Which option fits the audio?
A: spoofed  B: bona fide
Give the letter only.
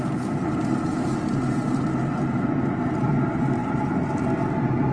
B